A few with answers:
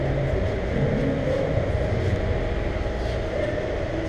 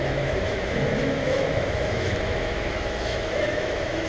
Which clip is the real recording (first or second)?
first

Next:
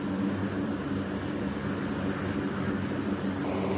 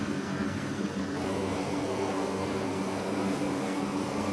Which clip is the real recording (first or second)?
first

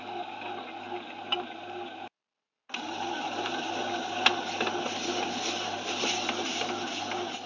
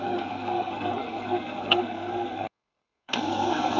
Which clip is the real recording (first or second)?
first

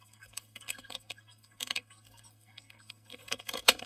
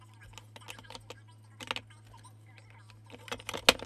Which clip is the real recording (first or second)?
second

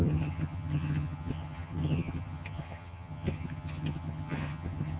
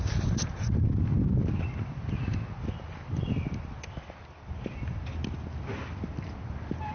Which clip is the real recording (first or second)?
second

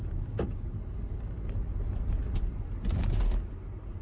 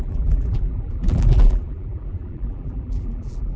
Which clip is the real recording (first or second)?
first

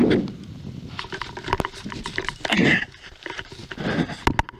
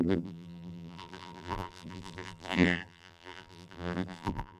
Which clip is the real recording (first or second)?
first